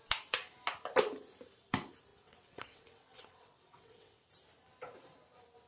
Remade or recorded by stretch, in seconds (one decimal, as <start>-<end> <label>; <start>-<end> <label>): 0.0-2.1 recorded; 2.1-4.3 remade; 4.3-5.7 recorded